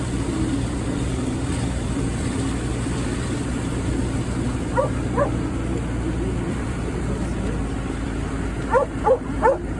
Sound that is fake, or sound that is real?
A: fake